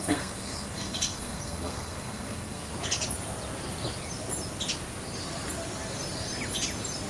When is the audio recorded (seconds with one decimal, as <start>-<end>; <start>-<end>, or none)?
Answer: 2.7-7.1